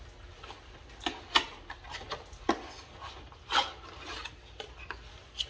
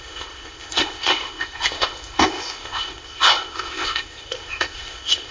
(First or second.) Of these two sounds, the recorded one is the first